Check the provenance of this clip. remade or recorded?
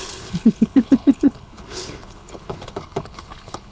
remade